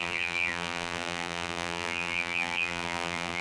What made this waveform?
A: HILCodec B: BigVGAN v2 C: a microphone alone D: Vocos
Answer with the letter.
B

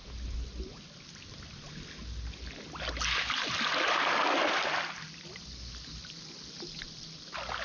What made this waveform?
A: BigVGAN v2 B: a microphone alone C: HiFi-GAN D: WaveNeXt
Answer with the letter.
B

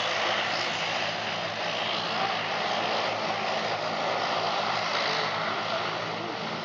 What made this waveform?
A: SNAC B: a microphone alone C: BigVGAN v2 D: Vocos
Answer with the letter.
B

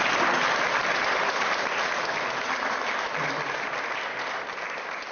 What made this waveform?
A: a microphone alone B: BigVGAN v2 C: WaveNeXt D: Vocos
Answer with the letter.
A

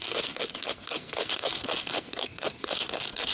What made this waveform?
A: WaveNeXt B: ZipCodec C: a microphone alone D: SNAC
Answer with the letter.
D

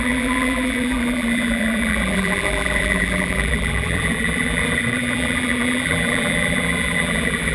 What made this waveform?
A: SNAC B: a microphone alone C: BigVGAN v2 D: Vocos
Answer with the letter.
C